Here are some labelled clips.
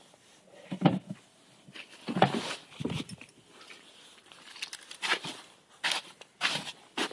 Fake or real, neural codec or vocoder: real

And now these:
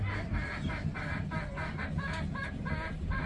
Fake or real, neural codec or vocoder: real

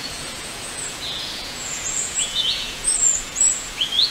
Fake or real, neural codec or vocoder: fake, vocoder, Vocos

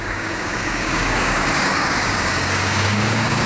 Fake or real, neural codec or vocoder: fake, codec, DAC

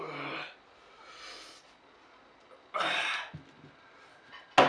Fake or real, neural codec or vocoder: real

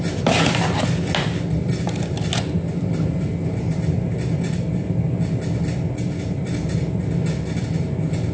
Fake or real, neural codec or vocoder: real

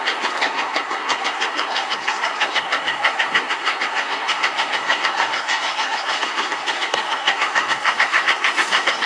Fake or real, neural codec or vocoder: fake, codec, SNAC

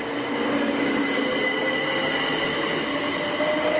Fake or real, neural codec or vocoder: real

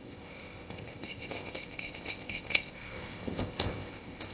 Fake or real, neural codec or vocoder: fake, codec, ZipCodec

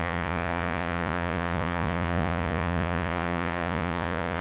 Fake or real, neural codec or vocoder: fake, vocoder, Vocos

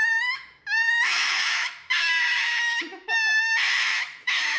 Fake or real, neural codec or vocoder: fake, autoencoder, DAC-VAE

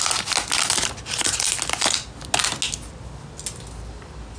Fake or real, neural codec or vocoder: real